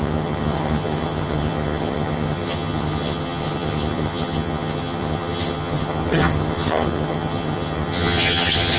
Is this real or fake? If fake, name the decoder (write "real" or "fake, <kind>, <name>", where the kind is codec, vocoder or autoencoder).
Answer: fake, vocoder, HiFi-GAN